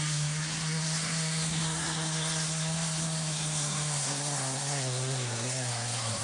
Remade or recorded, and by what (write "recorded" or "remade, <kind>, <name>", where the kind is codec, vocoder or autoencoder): remade, codec, SNAC